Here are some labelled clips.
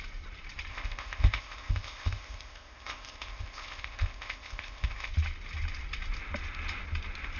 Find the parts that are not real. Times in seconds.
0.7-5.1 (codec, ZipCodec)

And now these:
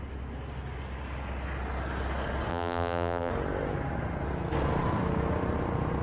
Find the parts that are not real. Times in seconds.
2.5-3.3 (vocoder, BigVGAN v2)

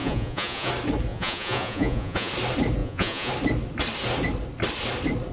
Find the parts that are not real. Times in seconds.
0.0-0.7 (vocoder, Vocos); 1.1-2.3; 2.8-3.3

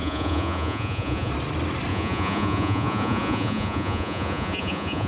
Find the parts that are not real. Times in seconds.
0.0-1.3 (vocoder, Vocos); 1.9-5.1

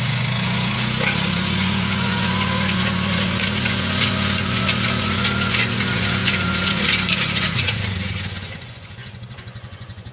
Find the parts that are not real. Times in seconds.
0.0-10.1 (vocoder, Vocos)

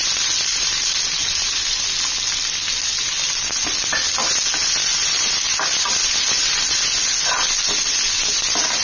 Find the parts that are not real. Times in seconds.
none